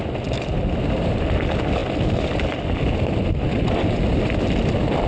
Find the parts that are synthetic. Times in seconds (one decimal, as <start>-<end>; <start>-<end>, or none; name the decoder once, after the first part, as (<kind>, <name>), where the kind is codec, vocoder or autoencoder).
none